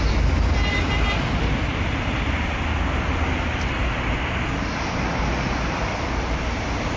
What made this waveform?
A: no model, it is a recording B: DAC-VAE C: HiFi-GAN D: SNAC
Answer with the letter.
A